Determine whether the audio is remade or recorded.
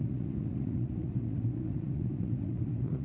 remade